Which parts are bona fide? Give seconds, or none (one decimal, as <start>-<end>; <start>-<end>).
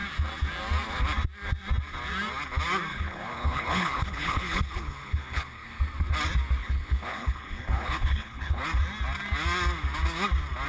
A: 0.0-2.9; 5.8-6.6; 8.6-10.7